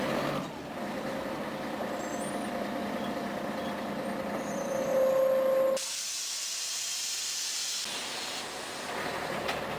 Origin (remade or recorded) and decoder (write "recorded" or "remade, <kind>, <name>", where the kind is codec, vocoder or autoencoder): recorded